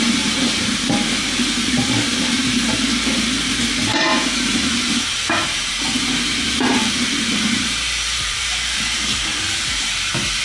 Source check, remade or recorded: remade